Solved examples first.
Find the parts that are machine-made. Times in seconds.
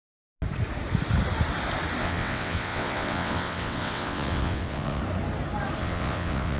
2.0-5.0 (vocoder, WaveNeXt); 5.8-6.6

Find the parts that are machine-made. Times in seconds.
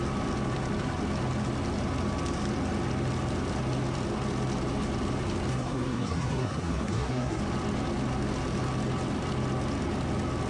5.5-7.4 (codec, SNAC)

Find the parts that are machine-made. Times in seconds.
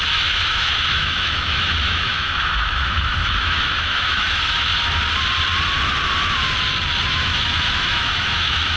0.0-4.7 (autoencoder, DAC-VAE); 7.1-8.8